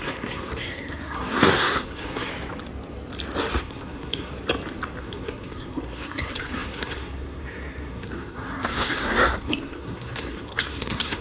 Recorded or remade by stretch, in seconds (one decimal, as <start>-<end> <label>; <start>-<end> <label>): 0.0-2.3 remade; 2.3-3.6 recorded; 3.6-4.3 remade; 4.3-5.0 recorded; 5.0-11.2 remade